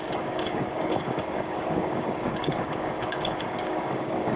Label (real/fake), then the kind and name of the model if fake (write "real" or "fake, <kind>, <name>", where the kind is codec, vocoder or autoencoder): fake, codec, DAC